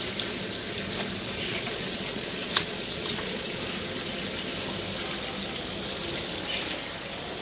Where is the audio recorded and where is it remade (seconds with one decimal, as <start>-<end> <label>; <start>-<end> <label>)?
0.0-1.5 recorded; 1.5-3.6 remade; 3.6-7.4 recorded